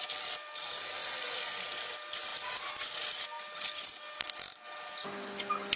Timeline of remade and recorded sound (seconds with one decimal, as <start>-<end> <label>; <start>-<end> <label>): 0.0-5.8 recorded